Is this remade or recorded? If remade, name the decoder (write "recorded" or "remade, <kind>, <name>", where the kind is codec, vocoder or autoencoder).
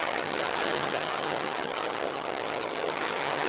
remade, vocoder, HiFi-GAN